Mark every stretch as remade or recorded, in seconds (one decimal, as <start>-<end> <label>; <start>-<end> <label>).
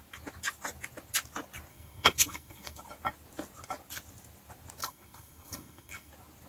0.0-1.7 recorded; 1.7-2.8 remade; 2.8-4.8 recorded; 4.8-6.1 remade; 6.1-6.5 recorded